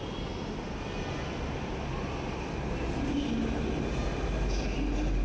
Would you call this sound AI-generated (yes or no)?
no